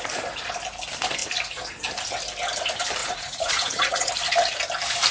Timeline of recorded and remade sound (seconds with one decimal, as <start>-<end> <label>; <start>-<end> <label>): 0.0-3.0 recorded; 3.0-4.1 remade; 4.1-5.1 recorded